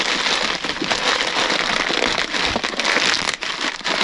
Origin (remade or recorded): recorded